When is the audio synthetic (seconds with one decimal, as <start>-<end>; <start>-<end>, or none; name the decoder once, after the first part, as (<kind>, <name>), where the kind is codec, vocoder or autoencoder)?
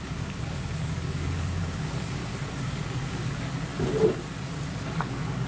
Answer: 0.0-2.2 (codec, DAC); 2.7-3.7; 5.0-5.5